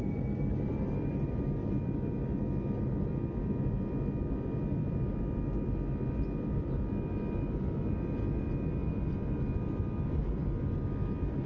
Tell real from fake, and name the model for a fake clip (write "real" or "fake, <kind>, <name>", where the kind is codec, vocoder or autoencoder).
real